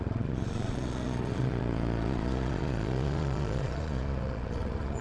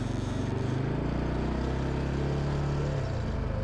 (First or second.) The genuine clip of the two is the second